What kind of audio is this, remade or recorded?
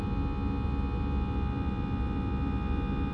recorded